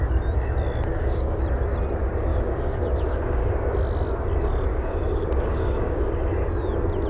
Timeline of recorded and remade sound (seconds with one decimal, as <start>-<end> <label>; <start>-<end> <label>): 0.0-0.9 recorded; 0.9-1.4 remade; 1.4-2.3 recorded; 2.3-3.5 remade; 3.5-4.7 recorded; 4.7-6.1 remade; 6.1-7.1 recorded